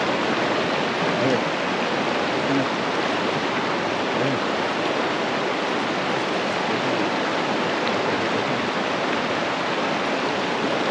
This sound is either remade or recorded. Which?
recorded